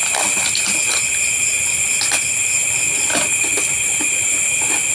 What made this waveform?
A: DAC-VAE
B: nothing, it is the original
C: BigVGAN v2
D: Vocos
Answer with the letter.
B